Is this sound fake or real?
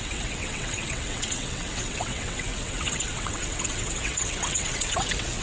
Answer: fake